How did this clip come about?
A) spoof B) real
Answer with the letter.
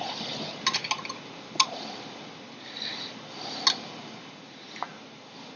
B